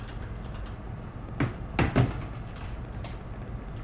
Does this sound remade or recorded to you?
recorded